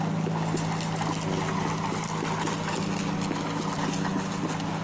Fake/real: real